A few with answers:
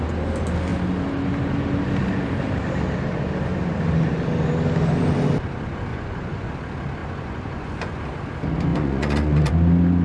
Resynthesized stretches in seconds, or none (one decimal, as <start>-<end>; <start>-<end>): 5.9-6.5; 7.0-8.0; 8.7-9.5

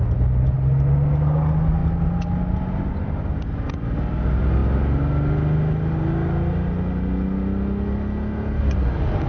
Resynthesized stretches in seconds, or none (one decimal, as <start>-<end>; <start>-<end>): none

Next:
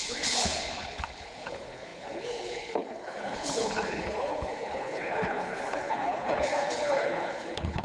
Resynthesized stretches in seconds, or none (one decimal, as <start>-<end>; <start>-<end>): 0.0-7.8

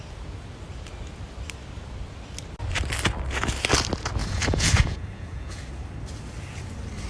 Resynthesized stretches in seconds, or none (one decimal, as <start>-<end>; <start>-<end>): 4.2-5.7